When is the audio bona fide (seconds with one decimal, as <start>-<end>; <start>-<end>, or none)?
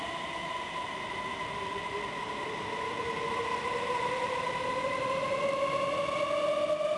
0.0-1.3; 5.3-7.0